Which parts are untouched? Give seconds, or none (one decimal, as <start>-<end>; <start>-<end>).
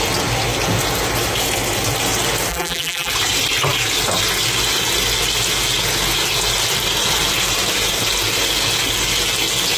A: 0.0-2.5; 3.1-9.8